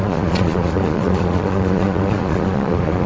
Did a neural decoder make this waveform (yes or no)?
yes